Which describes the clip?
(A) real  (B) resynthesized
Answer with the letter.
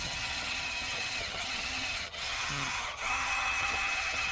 B